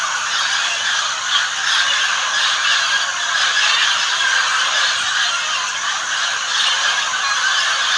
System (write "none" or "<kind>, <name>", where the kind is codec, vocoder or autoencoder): none